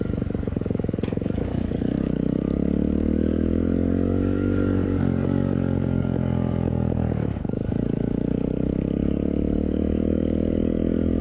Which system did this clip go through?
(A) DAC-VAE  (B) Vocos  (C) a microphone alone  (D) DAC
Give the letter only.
D